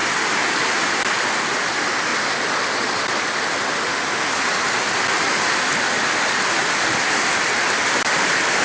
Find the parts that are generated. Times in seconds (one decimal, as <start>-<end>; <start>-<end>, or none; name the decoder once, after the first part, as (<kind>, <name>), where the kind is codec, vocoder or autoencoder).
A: 0.9-2.1 (vocoder, BigVGAN v2); 6.9-8.6